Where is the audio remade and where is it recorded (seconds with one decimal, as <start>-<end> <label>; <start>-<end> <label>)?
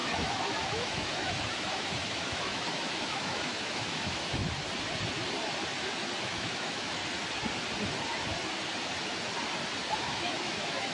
0.0-4.4 remade; 4.4-6.2 recorded; 6.2-7.0 remade; 7.0-10.0 recorded; 10.0-10.9 remade